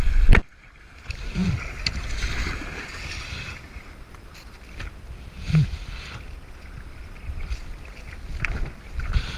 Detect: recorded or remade recorded